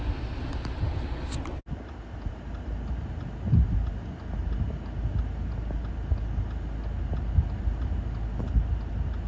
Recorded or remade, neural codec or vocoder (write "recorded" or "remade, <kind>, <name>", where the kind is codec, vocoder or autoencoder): recorded